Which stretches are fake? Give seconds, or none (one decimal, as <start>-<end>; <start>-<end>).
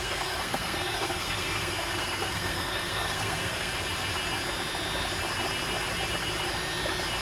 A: 0.0-3.7